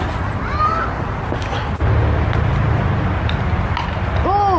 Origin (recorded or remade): recorded